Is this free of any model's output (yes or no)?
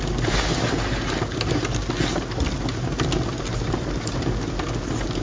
yes